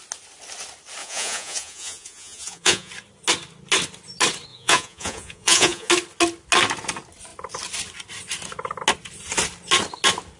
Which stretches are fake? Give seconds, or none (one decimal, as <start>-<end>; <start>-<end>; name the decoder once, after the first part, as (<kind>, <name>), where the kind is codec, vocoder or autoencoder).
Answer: 1.0-2.9 (vocoder, Vocos); 4.5-5.9